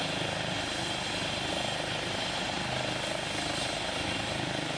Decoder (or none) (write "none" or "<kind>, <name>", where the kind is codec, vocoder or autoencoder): none